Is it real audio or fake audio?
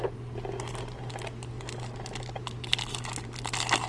real